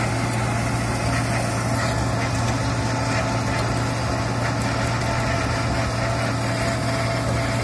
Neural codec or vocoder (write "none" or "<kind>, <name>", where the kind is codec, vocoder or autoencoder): none